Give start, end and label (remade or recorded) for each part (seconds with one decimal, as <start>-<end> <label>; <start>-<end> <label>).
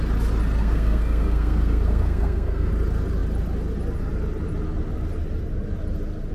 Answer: 0.0-0.6 recorded; 0.6-2.7 remade; 2.7-6.3 recorded